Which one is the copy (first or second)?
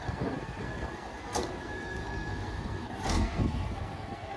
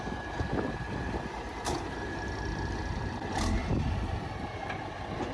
first